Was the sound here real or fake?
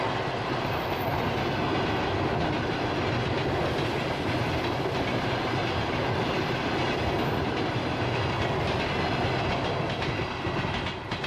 real